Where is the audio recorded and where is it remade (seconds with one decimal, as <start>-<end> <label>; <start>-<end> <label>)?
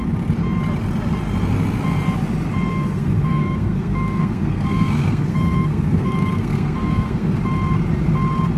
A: 0.0-2.7 recorded; 2.7-7.4 remade; 7.4-8.6 recorded